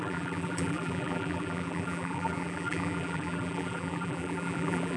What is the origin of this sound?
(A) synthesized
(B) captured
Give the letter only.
A